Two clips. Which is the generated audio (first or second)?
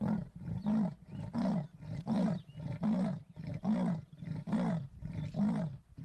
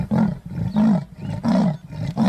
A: first